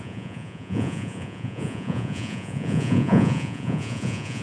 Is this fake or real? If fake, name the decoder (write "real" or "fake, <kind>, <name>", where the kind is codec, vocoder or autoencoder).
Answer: fake, vocoder, Vocos